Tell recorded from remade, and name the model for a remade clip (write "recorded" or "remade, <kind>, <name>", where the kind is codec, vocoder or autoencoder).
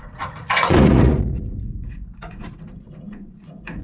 remade, vocoder, Vocos